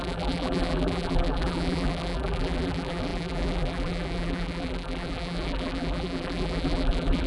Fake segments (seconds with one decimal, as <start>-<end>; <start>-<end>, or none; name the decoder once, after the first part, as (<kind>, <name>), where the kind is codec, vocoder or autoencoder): 0.0-7.3 (vocoder, BigVGAN v2)